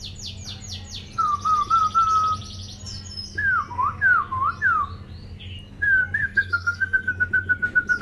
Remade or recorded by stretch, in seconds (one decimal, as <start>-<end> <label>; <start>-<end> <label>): 0.0-6.2 recorded; 6.2-7.1 remade; 7.1-8.0 recorded